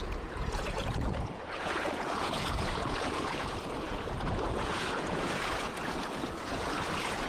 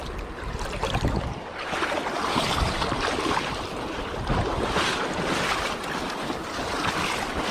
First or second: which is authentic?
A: second